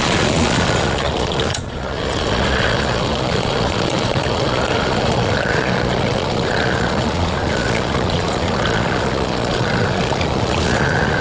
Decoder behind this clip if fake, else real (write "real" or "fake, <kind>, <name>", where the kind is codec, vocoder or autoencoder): fake, vocoder, Vocos